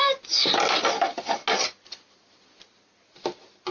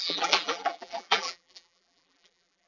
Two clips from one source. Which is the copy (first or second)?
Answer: second